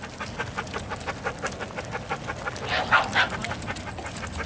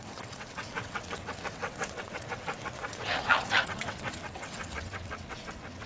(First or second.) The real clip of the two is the first